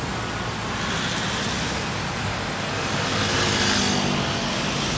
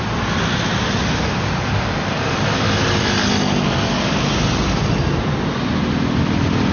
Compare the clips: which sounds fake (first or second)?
second